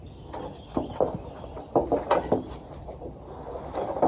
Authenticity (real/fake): real